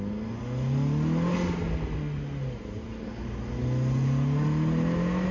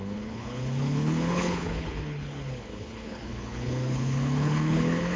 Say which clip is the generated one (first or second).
second